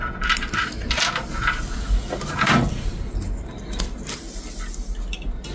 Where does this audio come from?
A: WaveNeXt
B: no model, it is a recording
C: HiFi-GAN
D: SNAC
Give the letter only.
B